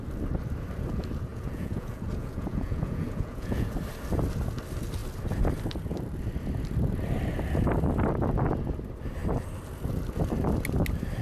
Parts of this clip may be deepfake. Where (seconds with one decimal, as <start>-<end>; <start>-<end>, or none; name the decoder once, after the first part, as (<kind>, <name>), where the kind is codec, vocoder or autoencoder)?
1.3-3.7 (vocoder, Vocos)